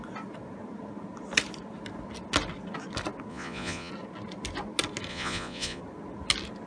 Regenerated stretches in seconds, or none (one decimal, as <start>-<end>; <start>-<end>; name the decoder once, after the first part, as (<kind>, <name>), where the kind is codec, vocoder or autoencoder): 3.3-3.9 (vocoder, Vocos); 5.1-5.8